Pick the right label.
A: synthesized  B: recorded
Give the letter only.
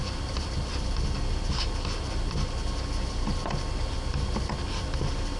B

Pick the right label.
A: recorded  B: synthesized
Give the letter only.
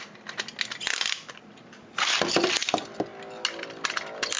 A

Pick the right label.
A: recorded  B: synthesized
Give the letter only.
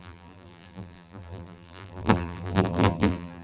B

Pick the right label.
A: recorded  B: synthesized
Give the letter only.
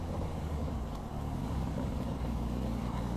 B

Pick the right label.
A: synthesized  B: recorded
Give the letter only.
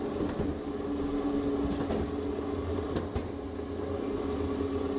B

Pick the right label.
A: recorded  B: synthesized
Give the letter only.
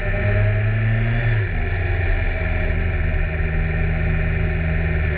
A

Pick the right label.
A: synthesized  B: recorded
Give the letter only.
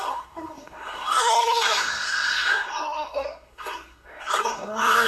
A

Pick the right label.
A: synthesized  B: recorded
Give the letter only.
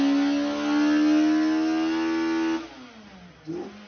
B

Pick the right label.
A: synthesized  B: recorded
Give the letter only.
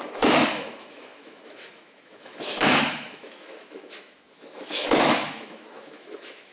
A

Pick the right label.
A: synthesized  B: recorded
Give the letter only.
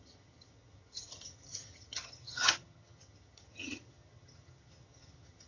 A